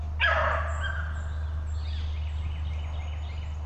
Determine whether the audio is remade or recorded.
recorded